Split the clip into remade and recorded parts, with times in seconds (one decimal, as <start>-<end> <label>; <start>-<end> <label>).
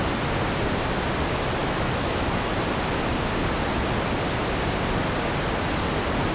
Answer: 0.0-1.6 recorded; 1.6-2.6 remade; 2.6-6.3 recorded